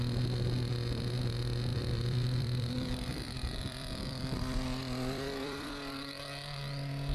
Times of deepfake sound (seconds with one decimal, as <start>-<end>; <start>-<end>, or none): 1.7-5.7